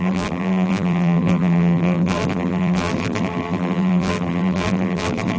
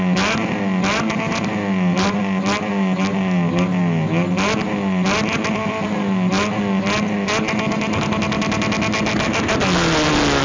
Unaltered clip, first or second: second